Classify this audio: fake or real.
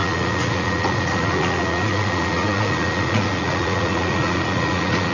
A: fake